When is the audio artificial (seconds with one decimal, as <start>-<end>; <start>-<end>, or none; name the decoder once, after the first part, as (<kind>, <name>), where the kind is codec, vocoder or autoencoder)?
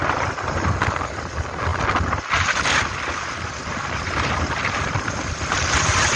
1.7-5.4 (vocoder, BigVGAN v2)